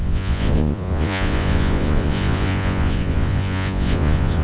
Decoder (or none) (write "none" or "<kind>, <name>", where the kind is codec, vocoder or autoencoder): vocoder, Vocos